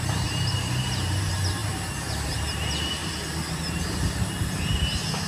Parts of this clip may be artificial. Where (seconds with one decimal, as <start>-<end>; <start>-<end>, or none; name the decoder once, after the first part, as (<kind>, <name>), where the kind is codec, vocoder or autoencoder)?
0.0-3.0 (vocoder, BigVGAN v2)